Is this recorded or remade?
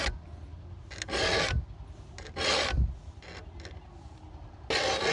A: recorded